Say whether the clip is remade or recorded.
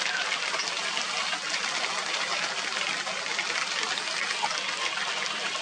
recorded